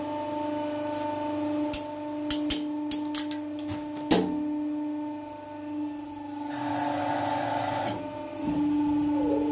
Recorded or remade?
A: recorded